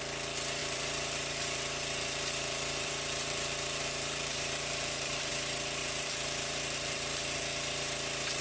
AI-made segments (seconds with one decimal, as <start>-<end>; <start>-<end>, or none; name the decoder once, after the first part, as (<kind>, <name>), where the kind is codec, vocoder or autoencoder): 0.6-5.3 (vocoder, BigVGAN v2); 5.8-7.4

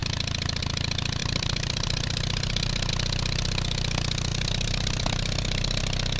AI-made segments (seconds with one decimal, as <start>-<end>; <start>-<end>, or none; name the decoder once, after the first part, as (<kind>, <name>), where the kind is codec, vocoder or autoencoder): 1.2-2.9 (vocoder, BigVGAN v2); 4.3-5.8

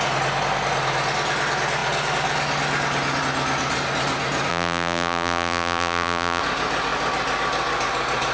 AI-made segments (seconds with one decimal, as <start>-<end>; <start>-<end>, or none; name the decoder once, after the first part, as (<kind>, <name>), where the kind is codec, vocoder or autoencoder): 4.5-6.4 (vocoder, BigVGAN v2)

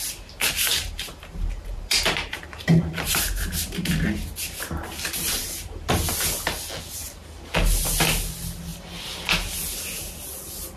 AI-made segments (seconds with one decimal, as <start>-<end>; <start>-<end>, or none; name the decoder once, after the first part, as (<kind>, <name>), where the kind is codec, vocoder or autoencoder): 0.7-3.9 (vocoder, BigVGAN v2); 5.2-6.1

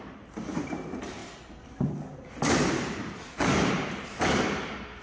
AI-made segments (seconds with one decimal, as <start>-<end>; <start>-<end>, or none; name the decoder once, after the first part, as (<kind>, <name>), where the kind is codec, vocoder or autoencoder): 0.0-5.0 (vocoder, BigVGAN v2)

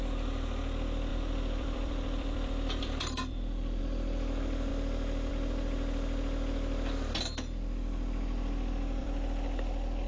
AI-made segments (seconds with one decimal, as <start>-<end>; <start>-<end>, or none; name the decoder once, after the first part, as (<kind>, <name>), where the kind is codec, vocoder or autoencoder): 1.1-3.8 (vocoder, BigVGAN v2); 9.0-10.1

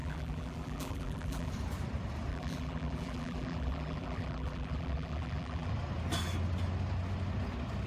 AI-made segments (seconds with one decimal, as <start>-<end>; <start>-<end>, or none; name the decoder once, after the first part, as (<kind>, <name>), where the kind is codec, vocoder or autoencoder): 0.0-1.5 (vocoder, BigVGAN v2); 2.3-5.7